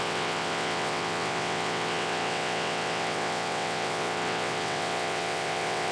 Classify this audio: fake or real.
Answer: fake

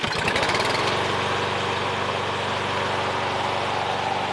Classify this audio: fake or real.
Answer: real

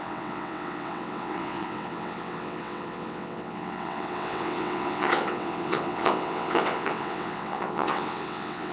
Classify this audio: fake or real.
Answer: fake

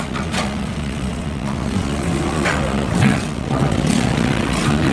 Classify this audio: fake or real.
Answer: fake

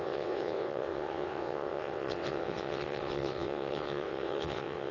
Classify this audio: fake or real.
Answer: fake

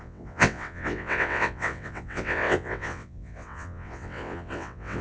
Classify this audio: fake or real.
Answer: fake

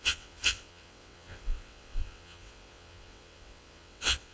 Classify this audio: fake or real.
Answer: fake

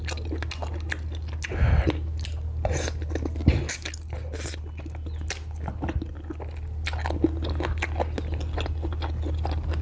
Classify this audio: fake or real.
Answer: real